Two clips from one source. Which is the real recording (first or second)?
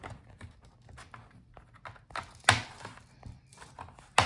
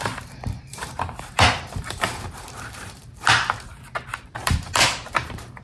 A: first